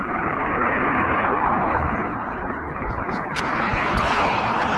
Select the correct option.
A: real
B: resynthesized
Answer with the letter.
B